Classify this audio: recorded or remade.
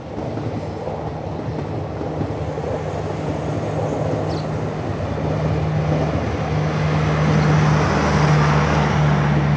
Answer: recorded